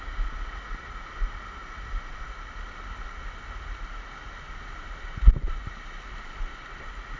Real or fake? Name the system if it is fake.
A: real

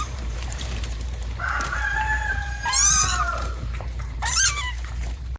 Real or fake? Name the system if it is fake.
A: fake, vocoder, BigVGAN v2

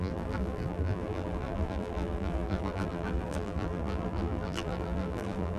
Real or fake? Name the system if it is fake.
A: fake, vocoder, BigVGAN v2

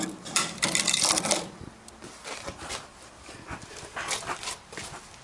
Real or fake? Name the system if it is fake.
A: fake, vocoder, BigVGAN v2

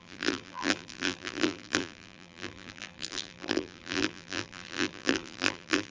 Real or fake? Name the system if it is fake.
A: fake, vocoder, BigVGAN v2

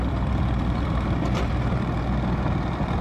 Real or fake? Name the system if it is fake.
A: fake, vocoder, BigVGAN v2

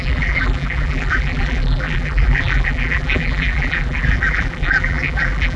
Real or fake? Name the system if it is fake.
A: fake, vocoder, BigVGAN v2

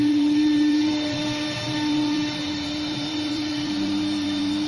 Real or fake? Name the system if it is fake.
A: fake, vocoder, BigVGAN v2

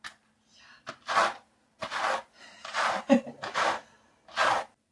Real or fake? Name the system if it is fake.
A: real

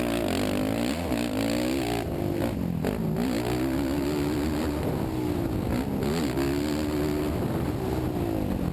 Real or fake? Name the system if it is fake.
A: real